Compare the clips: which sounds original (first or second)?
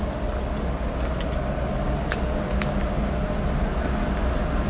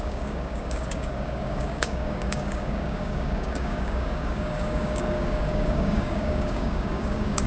first